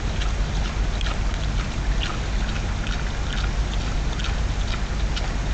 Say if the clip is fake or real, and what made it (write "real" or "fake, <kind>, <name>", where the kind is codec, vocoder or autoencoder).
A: real